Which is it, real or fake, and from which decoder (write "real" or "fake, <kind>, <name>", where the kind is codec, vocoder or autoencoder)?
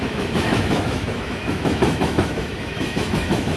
fake, autoencoder, DAC-VAE